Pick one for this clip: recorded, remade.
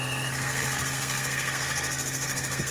remade